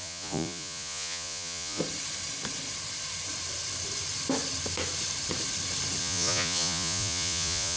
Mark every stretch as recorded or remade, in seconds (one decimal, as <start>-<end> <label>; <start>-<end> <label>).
0.0-1.8 remade; 1.8-6.0 recorded; 6.0-7.8 remade